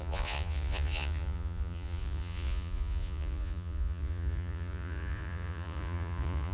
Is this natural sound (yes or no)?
no